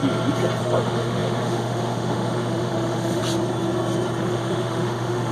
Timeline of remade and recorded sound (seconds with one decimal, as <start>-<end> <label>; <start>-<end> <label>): 0.0-0.6 recorded; 0.6-3.2 remade; 3.2-4.2 recorded; 4.2-5.3 remade